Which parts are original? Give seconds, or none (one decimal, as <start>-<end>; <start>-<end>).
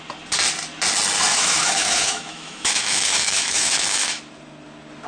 0.0-1.3; 4.2-5.1